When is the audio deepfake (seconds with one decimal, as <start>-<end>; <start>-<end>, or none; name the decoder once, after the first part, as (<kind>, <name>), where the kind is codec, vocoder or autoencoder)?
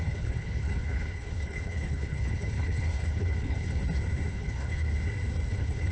0.0-3.8 (codec, HILCodec); 4.3-4.9; 5.5-5.9